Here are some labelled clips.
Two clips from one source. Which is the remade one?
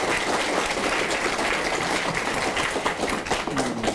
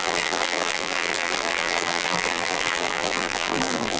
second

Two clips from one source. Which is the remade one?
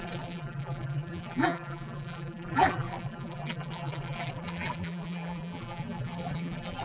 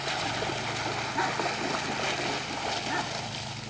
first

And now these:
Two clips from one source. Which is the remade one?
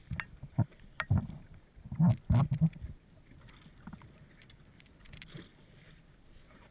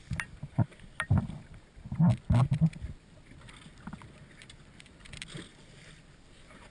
first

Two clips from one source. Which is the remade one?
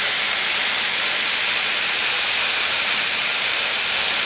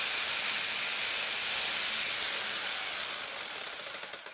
first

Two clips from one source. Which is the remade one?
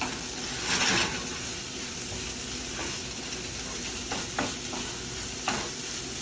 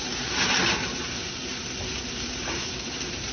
second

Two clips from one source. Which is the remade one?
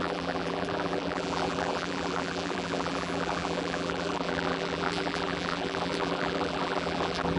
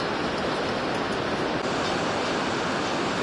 first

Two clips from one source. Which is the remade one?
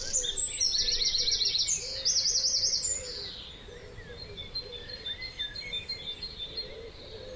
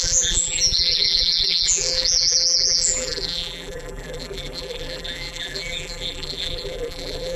second